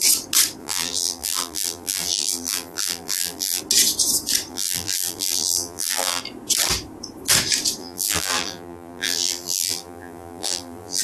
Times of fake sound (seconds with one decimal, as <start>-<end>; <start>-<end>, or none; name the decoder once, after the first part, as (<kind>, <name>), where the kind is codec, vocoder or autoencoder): 0.6-3.6 (vocoder, BigVGAN v2); 4.5-6.2; 7.8-11.0